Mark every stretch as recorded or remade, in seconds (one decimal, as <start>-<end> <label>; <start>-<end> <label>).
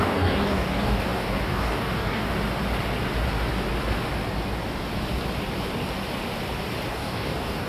0.0-2.3 remade; 2.3-6.9 recorded; 6.9-7.7 remade